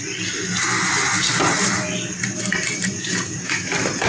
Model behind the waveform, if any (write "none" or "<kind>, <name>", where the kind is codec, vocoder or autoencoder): none